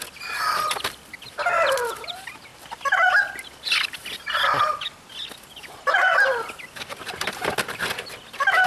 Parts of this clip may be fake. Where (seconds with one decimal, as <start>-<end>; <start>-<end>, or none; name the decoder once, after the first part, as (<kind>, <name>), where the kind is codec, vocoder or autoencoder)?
none